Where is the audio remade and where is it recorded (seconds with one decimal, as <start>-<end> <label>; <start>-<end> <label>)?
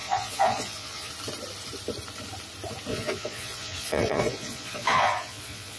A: 0.0-1.1 remade; 1.1-2.9 recorded; 2.9-5.8 remade